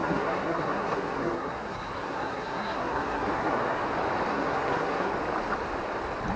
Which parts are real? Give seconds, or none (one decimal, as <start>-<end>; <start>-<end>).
3.8-4.3; 5.1-6.4